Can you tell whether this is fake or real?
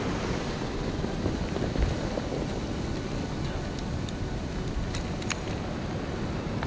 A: real